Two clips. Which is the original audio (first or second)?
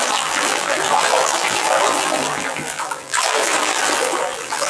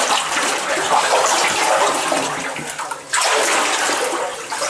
second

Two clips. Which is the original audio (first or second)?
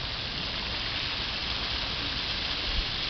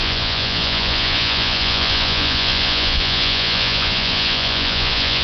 first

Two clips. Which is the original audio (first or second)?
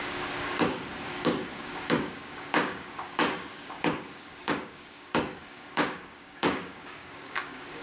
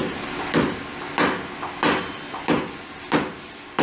second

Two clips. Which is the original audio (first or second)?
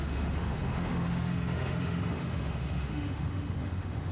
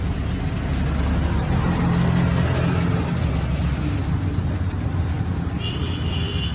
second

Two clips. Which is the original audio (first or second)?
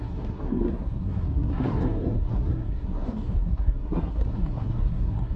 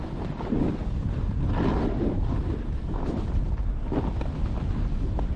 second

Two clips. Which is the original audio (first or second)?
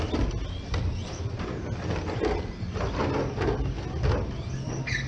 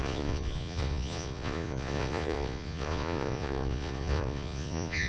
first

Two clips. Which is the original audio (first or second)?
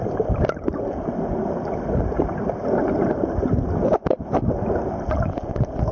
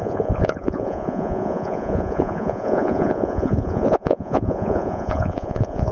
first